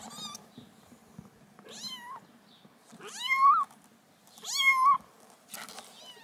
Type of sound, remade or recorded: recorded